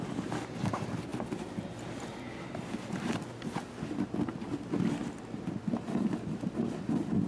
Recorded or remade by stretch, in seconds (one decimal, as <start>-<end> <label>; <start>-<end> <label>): 0.0-7.3 recorded